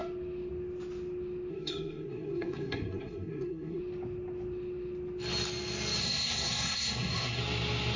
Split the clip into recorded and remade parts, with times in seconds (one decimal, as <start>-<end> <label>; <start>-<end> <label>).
0.0-1.5 recorded; 1.5-3.8 remade; 3.8-6.0 recorded; 6.0-7.4 remade; 7.4-8.0 recorded